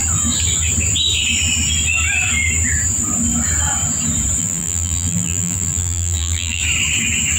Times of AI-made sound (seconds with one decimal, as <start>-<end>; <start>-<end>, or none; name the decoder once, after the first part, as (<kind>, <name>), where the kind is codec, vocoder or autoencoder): 4.4-6.6 (vocoder, BigVGAN v2)